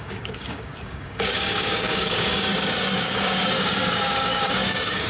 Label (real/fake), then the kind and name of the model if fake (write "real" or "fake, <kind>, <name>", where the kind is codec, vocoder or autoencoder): fake, codec, DAC